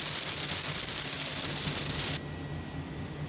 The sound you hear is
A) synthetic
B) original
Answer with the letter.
B